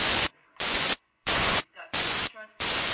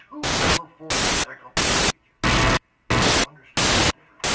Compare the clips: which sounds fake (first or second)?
first